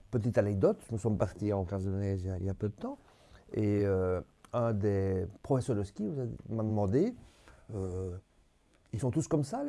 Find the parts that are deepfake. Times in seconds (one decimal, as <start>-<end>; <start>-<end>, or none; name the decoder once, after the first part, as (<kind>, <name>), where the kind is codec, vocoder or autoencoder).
1.2-2.7 (codec, SNAC); 7.2-9.0